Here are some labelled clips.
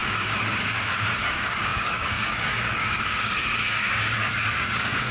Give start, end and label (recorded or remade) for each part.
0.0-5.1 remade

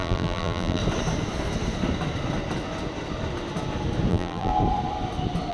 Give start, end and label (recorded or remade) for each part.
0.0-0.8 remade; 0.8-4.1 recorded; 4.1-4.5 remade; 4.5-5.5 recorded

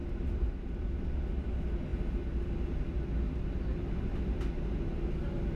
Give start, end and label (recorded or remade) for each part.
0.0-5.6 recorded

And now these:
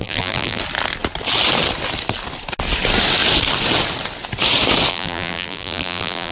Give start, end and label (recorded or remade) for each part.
0.0-0.6 remade; 0.6-4.9 recorded; 4.9-6.3 remade

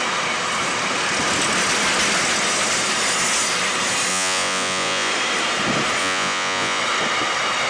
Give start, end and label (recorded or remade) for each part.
0.0-4.1 recorded; 4.1-5.1 remade; 5.1-6.0 recorded; 6.0-6.8 remade; 6.8-7.7 recorded

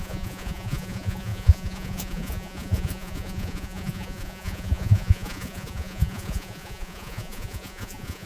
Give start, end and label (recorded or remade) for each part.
0.0-8.3 remade

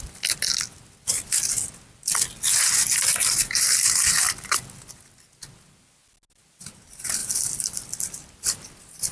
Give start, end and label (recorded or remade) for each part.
0.0-7.2 recorded; 7.2-8.3 remade; 8.3-9.1 recorded

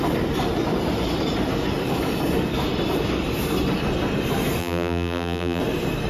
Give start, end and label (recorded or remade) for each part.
0.0-4.6 recorded; 4.6-5.6 remade; 5.6-6.1 recorded